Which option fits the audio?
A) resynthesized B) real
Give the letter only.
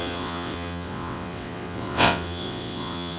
A